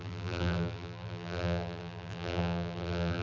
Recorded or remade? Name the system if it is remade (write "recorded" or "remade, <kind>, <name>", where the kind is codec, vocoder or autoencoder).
remade, vocoder, BigVGAN v2